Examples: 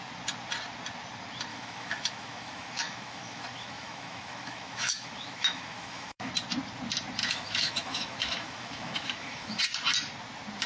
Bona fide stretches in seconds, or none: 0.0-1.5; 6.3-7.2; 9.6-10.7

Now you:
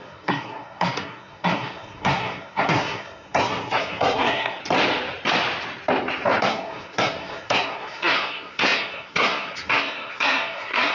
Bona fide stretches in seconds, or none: 4.6-6.4

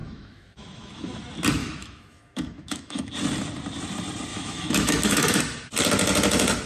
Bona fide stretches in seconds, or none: 1.2-1.6; 3.1-4.3; 5.4-6.7

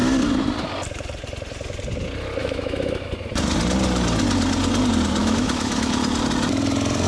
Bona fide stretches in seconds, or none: 0.0-2.4; 3.1-5.2; 5.9-7.1

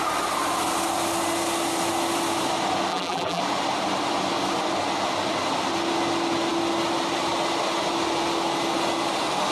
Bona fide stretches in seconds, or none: 0.0-2.9; 3.4-9.5

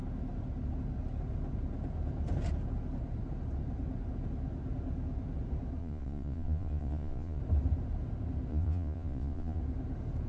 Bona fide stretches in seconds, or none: 0.0-5.8; 7.4-8.5; 9.6-10.3

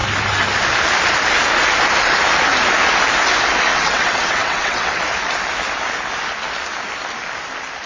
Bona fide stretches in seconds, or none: 0.0-3.7; 5.0-7.9

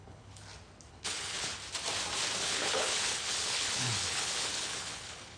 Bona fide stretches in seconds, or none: 0.4-0.9; 1.5-2.4